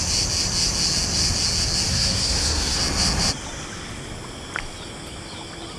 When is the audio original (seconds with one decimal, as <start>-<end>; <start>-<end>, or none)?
0.0-1.9; 2.8-5.8